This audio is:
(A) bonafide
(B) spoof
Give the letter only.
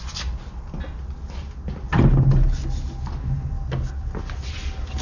A